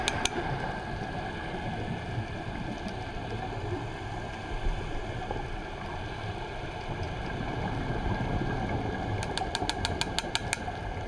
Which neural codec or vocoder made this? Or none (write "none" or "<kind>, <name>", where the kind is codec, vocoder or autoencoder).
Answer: none